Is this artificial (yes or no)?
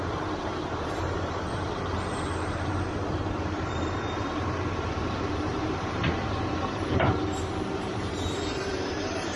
yes